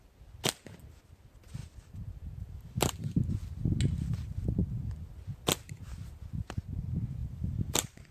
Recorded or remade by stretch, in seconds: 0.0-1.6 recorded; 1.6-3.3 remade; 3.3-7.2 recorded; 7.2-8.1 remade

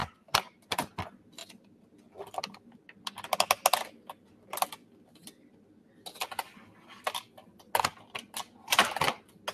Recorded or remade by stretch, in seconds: 0.0-0.9 remade; 0.9-9.5 recorded

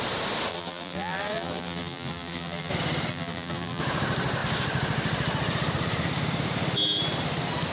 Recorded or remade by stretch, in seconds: 0.0-0.5 recorded; 0.5-2.7 remade; 2.7-3.1 recorded; 3.1-3.8 remade; 3.8-7.7 recorded

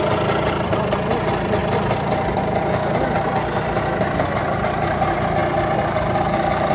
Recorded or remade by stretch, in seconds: 0.0-6.7 recorded

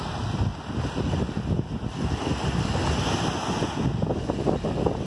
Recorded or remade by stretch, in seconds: 0.0-5.1 recorded

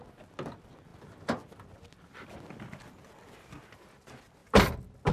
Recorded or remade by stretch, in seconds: 0.0-5.1 recorded

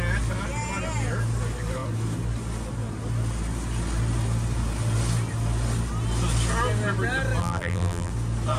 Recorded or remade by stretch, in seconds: 0.0-7.4 recorded; 7.4-8.1 remade; 8.1-8.6 recorded

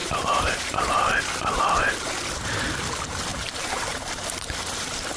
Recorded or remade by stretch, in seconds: 0.0-1.2 remade; 1.2-3.3 recorded; 3.3-4.3 remade; 4.3-5.2 recorded